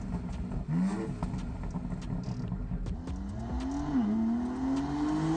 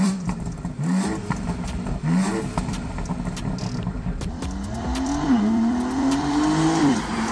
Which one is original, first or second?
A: first